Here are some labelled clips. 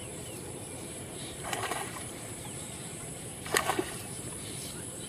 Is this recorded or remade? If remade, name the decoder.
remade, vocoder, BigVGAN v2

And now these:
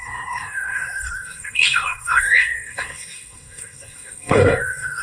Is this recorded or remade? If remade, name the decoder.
remade, codec, SNAC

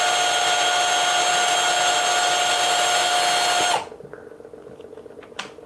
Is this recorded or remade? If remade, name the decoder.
recorded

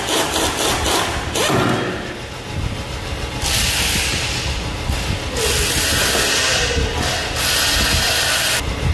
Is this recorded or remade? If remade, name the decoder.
recorded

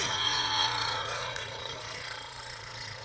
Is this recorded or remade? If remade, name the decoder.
remade, vocoder, Vocos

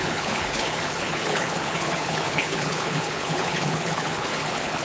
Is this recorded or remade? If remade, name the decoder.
remade, codec, HILCodec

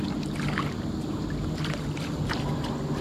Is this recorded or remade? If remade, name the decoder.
recorded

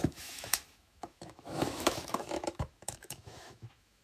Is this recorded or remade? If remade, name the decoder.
remade, autoencoder, DAC-VAE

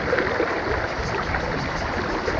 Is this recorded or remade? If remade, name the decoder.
recorded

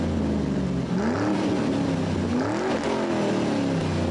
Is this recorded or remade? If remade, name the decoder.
recorded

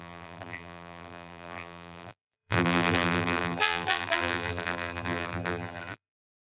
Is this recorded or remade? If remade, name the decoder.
remade, vocoder, BigVGAN v2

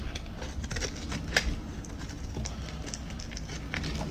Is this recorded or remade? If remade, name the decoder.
recorded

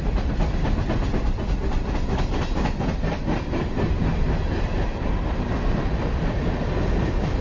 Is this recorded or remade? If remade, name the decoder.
recorded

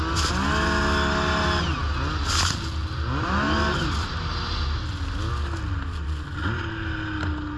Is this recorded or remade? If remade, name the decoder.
recorded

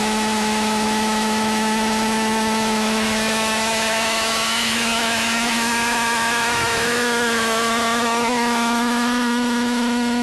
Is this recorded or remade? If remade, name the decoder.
remade, autoencoder, DAC-VAE